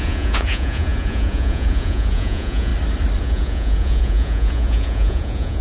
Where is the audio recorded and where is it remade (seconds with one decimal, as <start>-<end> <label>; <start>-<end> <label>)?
0.0-2.7 remade; 2.7-3.2 recorded; 3.2-5.6 remade

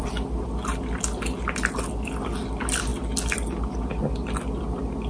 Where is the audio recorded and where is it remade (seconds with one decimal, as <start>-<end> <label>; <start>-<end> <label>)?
0.0-5.1 recorded

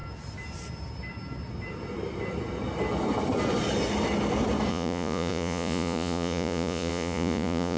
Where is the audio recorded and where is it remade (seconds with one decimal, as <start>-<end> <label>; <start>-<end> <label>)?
0.0-4.7 recorded; 4.7-7.8 remade

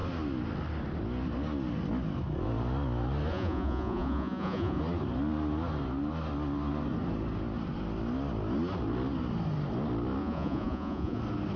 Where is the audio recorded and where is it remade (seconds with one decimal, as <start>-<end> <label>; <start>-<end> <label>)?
0.0-3.3 recorded; 3.3-4.8 remade; 4.8-10.2 recorded; 10.2-11.2 remade; 11.2-11.6 recorded

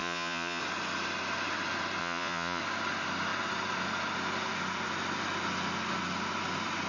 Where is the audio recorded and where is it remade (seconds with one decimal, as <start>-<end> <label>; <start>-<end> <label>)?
0.0-0.6 remade; 0.6-2.0 recorded; 2.0-2.6 remade; 2.6-6.9 recorded

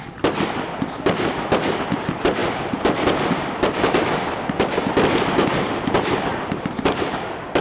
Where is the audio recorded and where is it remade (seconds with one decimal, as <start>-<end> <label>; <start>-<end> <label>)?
0.0-7.6 recorded

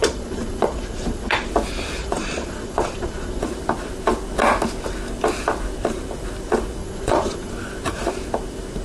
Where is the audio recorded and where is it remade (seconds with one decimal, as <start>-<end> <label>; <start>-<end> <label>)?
0.0-1.5 remade; 1.5-2.0 recorded; 2.0-3.4 remade; 3.4-6.8 recorded; 6.8-7.5 remade; 7.5-8.8 recorded

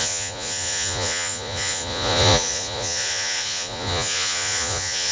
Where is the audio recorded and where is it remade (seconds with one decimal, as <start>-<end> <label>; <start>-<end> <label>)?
0.0-5.1 remade